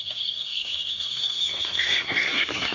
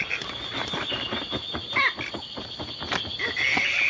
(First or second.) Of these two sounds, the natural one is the second